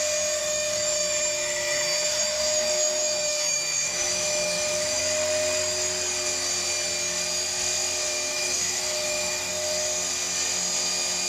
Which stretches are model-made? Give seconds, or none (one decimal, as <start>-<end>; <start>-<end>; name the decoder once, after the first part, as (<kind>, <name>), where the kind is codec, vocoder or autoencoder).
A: 0.4-5.0 (autoencoder, DAC-VAE); 8.3-9.5

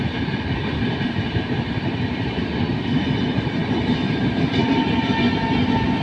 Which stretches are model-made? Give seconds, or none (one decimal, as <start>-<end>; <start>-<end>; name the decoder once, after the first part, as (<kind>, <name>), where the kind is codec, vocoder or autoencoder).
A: none